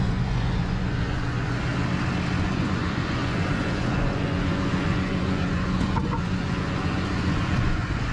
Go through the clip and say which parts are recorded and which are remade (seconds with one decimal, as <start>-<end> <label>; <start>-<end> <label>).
0.0-1.7 remade; 1.7-2.4 recorded; 2.4-8.1 remade